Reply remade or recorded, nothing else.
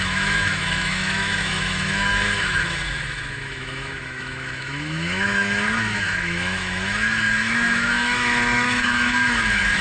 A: remade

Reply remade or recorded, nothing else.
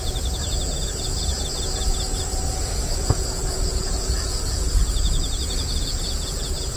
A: remade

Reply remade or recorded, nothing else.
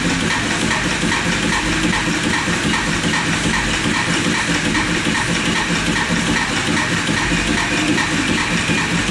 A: remade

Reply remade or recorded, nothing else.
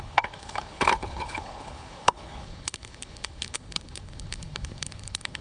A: remade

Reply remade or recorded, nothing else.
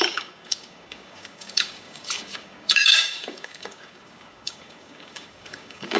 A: remade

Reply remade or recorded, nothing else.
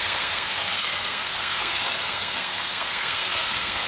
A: remade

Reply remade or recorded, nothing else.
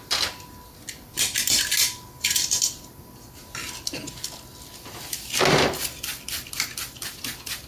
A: recorded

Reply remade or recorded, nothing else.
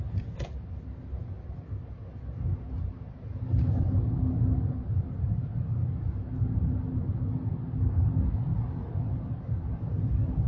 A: recorded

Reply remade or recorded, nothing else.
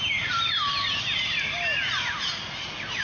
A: recorded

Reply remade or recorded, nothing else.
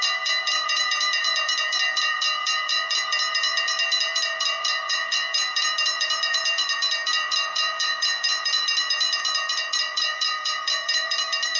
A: remade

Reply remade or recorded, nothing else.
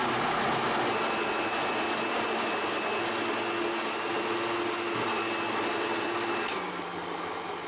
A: recorded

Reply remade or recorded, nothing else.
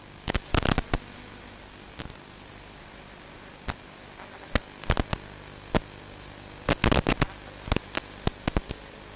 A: recorded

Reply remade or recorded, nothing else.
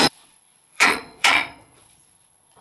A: remade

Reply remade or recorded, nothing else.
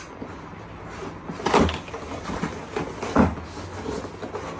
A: recorded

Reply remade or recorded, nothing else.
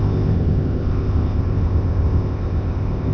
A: remade